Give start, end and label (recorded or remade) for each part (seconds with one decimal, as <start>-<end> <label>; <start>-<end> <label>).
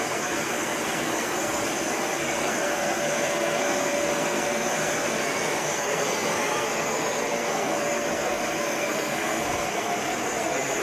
0.0-10.8 remade